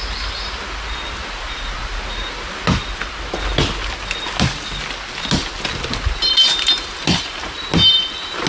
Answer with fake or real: real